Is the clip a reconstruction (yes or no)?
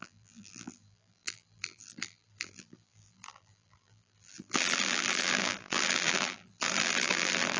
yes